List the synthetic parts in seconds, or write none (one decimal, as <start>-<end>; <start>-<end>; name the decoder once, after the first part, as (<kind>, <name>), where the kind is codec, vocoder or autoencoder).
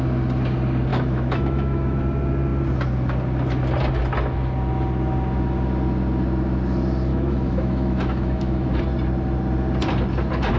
0.9-2.0 (autoencoder, DAC-VAE); 7.1-8.8